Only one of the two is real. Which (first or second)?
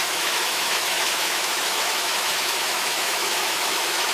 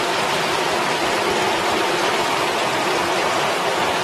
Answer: second